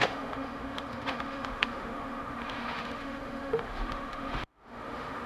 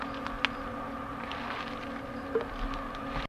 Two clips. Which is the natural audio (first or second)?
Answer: second